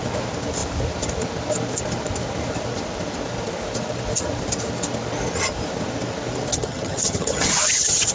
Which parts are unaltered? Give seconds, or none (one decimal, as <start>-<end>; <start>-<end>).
0.0-6.5